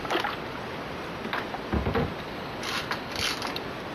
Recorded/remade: recorded